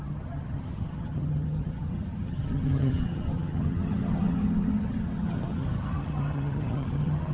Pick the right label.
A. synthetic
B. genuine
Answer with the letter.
A